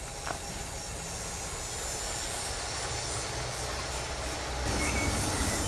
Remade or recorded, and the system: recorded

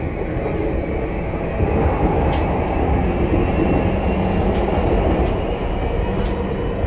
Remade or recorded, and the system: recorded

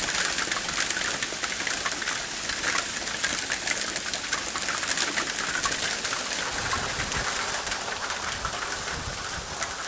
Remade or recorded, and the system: recorded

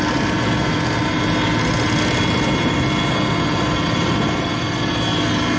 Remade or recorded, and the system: recorded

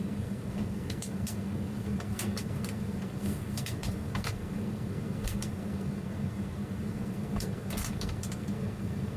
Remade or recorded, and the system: remade, codec, SNAC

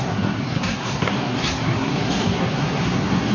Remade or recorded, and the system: remade, codec, SNAC